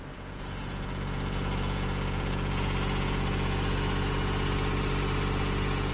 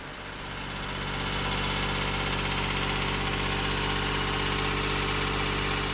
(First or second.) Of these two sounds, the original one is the second